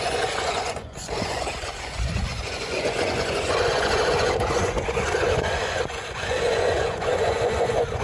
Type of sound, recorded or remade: remade